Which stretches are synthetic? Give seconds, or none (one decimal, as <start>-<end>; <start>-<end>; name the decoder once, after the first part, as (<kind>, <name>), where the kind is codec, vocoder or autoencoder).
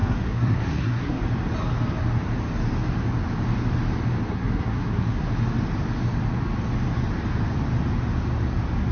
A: 0.0-1.2 (codec, SNAC); 4.3-5.3